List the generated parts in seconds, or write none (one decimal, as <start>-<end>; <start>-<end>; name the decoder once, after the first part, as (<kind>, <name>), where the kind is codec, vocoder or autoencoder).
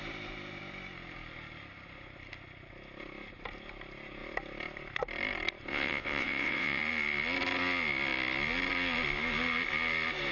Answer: 5.7-6.8 (vocoder, WaveNeXt)